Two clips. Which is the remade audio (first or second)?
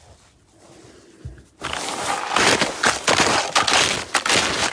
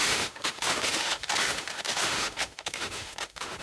second